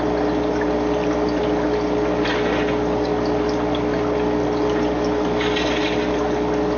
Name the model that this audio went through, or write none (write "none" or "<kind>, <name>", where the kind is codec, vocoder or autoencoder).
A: none